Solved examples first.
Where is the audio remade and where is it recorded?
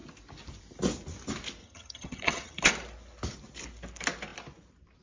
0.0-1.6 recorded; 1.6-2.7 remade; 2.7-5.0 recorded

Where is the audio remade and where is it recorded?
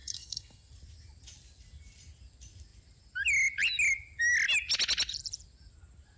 0.0-0.7 remade; 0.7-6.2 recorded